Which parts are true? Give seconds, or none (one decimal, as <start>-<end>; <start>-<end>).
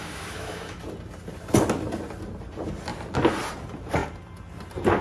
0.8-5.0